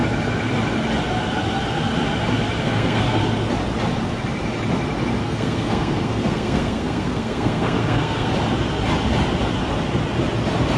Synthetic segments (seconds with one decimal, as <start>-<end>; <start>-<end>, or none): 2.6-3.2; 5.2-8.3